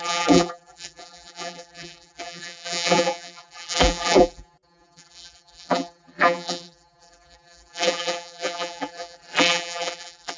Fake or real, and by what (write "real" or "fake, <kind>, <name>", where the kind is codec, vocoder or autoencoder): fake, vocoder, BigVGAN v2